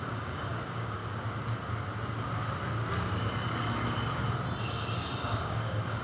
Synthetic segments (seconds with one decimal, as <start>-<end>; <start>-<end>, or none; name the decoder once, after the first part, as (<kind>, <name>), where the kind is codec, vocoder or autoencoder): 0.0-1.0 (codec, DAC); 4.6-6.0